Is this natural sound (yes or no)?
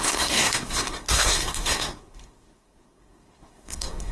no